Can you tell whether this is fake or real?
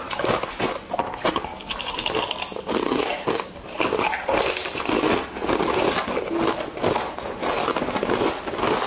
real